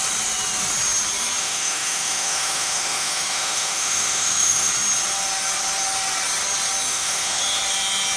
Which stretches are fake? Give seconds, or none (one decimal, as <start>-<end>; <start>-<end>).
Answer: 1.4-4.7; 6.9-7.4